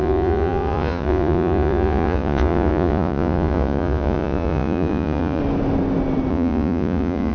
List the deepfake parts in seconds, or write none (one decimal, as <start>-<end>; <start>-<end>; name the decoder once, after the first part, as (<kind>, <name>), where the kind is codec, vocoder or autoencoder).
0.0-5.4 (vocoder, Vocos); 6.3-7.3